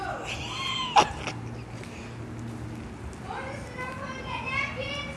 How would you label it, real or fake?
real